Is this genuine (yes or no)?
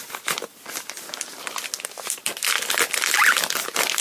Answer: yes